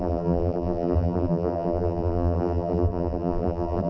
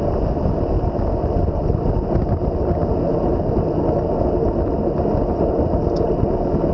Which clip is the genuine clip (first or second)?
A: second